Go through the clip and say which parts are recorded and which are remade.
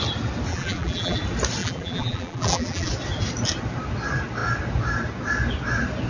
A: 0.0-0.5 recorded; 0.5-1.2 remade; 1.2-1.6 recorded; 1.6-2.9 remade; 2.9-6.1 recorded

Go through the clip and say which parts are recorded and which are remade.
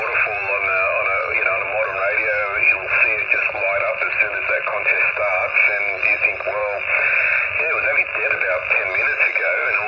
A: 0.0-9.9 recorded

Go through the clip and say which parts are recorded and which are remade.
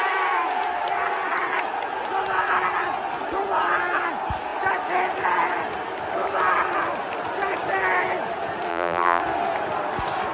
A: 0.0-8.7 recorded; 8.7-9.2 remade; 9.2-10.3 recorded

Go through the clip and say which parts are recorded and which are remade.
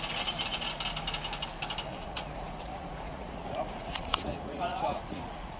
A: 0.0-1.9 recorded; 1.9-5.6 remade